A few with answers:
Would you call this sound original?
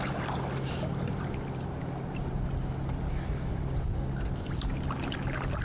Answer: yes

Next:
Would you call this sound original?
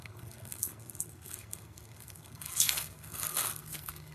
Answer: no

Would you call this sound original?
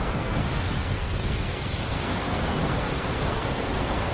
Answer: no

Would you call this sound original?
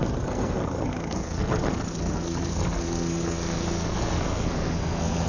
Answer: no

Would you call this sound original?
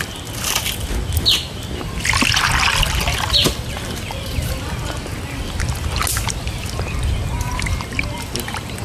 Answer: yes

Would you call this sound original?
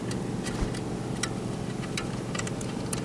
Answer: yes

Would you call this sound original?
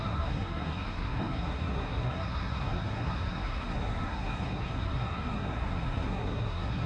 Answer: no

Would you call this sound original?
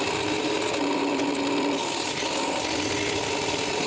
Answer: yes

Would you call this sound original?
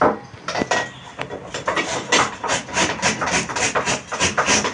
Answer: yes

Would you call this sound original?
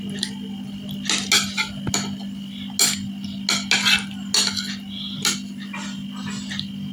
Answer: yes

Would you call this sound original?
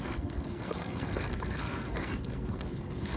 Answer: no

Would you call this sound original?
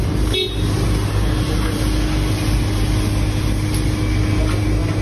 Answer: yes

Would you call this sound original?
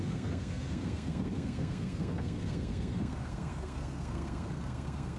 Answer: no